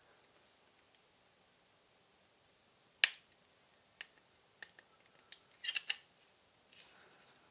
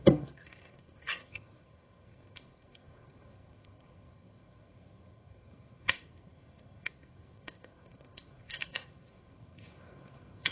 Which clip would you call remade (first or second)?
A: second